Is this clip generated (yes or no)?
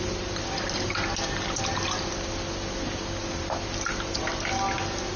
no